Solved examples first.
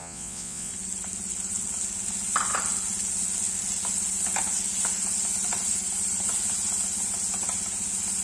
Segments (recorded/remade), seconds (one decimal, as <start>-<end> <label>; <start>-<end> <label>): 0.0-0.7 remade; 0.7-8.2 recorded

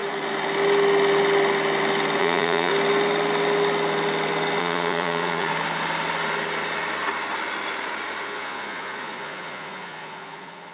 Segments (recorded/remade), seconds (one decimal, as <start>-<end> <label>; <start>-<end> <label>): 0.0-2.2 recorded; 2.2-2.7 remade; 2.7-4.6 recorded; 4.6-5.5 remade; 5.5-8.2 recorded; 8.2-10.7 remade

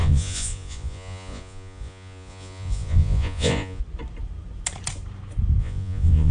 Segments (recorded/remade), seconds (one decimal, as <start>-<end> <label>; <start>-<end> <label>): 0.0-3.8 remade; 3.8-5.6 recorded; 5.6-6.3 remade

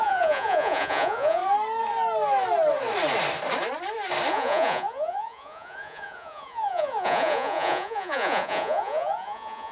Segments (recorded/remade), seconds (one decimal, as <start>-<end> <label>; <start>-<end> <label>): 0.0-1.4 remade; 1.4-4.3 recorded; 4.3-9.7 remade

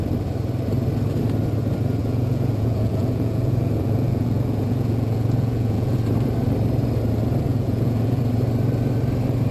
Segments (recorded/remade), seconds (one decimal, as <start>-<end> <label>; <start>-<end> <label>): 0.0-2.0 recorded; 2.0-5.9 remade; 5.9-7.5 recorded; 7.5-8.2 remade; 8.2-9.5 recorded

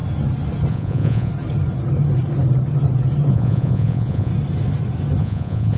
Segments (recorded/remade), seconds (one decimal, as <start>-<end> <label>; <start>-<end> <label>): 0.0-0.7 recorded; 0.7-1.3 remade; 1.3-3.3 recorded; 3.3-4.3 remade; 4.3-5.2 recorded; 5.2-5.8 remade